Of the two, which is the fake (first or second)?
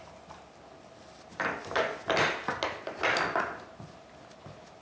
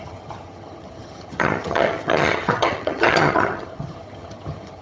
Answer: second